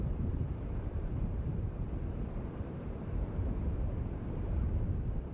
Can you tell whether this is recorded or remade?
remade